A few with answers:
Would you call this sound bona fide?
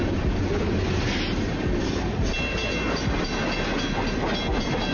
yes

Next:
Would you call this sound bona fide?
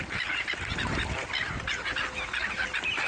yes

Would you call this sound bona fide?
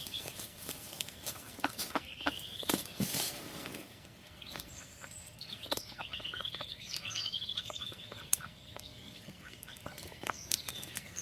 no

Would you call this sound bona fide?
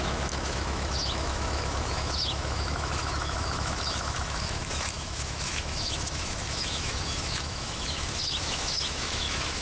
no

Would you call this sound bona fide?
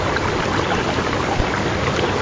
yes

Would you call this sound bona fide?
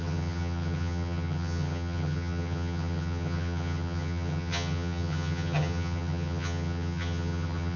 no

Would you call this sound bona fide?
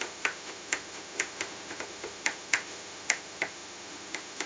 no